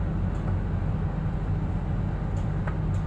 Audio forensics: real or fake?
real